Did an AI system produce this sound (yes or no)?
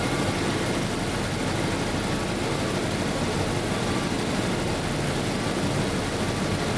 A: no